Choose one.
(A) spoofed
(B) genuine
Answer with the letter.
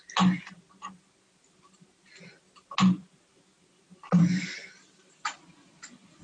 B